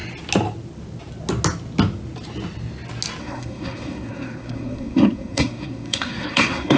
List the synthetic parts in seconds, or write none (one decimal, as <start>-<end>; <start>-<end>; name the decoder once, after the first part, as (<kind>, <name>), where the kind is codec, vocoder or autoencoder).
3.2-6.8 (codec, SNAC)